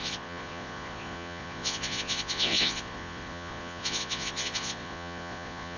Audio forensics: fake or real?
fake